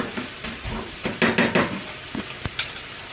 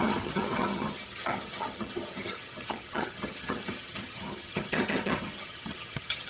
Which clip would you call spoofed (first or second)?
second